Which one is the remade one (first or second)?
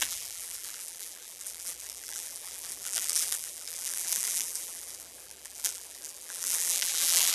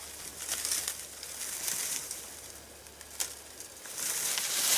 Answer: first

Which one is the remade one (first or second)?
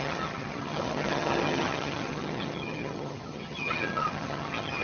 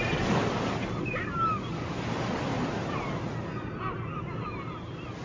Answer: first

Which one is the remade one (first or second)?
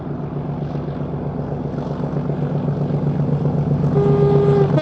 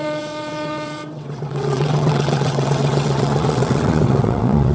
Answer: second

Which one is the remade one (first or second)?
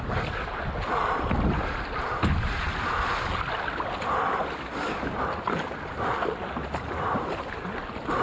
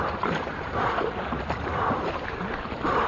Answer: second